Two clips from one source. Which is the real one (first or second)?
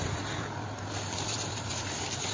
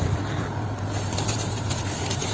first